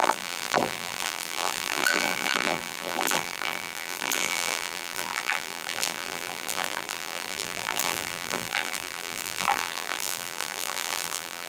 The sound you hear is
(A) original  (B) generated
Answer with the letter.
B